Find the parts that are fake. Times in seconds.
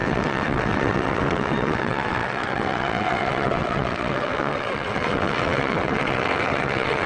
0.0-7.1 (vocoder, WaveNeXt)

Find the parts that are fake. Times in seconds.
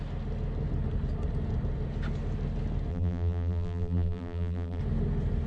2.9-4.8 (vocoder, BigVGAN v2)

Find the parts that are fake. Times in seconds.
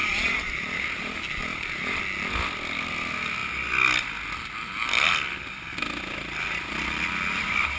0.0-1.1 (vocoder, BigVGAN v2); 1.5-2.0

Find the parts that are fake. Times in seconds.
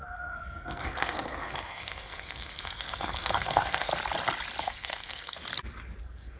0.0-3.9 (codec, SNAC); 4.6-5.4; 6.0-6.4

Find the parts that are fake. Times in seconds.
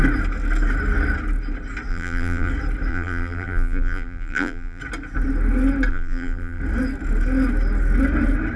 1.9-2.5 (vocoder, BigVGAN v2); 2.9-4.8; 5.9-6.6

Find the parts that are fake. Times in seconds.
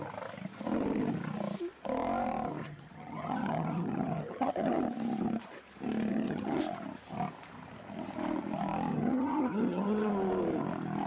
2.6-4.8 (vocoder, HiFi-GAN); 6.1-6.6; 8.9-10.1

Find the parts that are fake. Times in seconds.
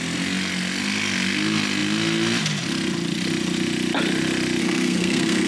4.6-5.5 (codec, SNAC)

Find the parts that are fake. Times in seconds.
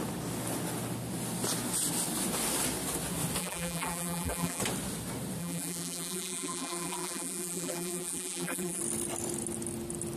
3.4-4.6 (vocoder, BigVGAN v2); 5.4-8.8